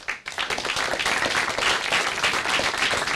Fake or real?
real